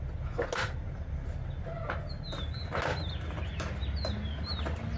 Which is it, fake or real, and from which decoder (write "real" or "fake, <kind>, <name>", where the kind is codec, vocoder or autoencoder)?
real